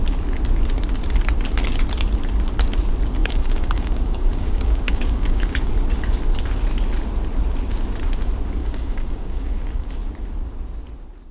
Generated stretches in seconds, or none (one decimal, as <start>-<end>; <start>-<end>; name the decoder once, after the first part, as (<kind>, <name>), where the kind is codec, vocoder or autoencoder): 3.2-5.7 (codec, DAC); 8.6-9.9